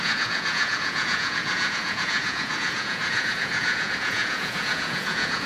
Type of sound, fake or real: fake